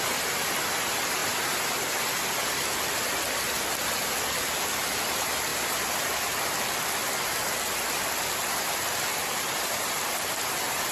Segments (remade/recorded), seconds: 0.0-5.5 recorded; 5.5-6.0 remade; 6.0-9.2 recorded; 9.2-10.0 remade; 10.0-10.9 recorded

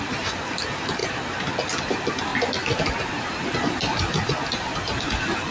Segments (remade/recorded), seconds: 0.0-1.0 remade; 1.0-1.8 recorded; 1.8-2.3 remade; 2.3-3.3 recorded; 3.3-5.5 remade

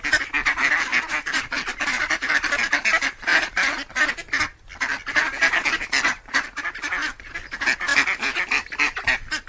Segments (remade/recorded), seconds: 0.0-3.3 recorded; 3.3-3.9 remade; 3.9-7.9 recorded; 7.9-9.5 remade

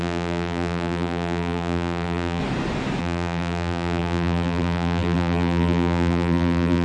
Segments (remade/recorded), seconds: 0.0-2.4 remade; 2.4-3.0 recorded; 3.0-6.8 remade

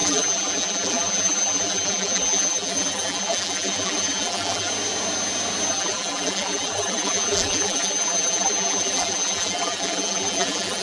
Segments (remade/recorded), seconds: 0.0-4.7 remade; 4.7-5.7 recorded; 5.7-10.8 remade